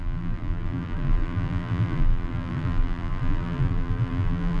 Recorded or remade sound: remade